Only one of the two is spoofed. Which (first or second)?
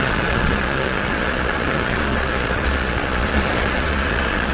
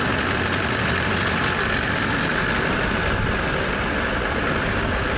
first